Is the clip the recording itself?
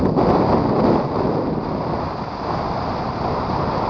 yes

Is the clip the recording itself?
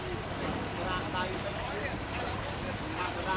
yes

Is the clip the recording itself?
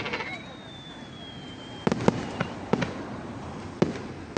yes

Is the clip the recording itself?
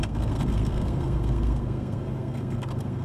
no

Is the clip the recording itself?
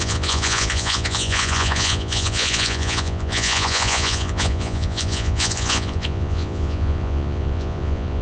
no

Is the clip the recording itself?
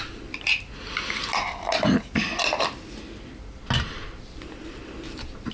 yes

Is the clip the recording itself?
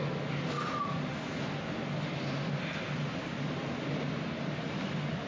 yes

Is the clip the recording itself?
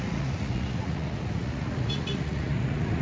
no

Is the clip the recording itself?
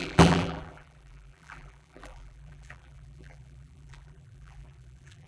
no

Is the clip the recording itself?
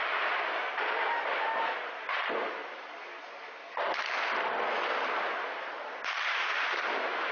yes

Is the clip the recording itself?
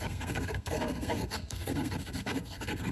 no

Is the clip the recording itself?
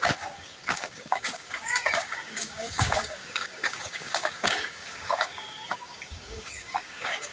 no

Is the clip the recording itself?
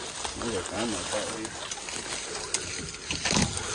yes